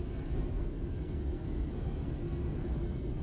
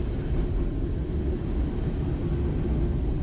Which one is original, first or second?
second